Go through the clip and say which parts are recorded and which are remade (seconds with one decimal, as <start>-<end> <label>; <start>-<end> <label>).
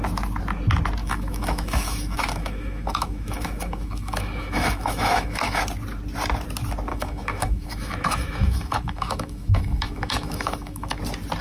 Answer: 0.0-1.0 recorded; 1.0-5.6 remade; 5.6-6.9 recorded; 6.9-11.0 remade; 11.0-11.4 recorded